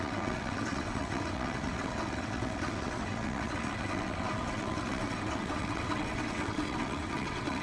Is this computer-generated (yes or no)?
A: yes